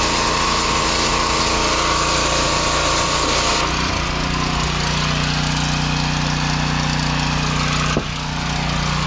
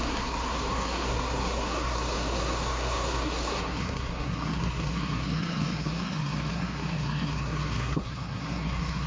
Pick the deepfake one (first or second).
second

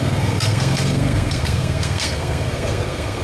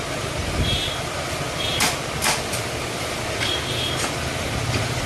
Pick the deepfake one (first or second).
first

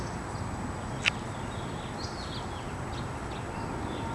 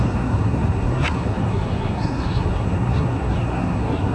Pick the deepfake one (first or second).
second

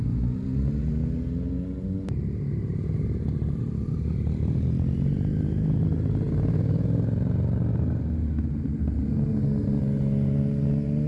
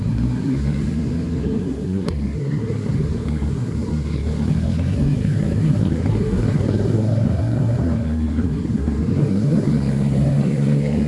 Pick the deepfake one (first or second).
second